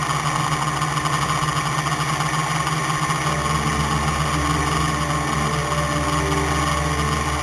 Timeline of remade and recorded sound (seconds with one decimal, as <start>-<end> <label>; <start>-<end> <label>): 0.0-7.4 recorded